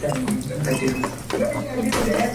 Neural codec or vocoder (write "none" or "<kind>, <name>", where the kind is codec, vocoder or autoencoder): none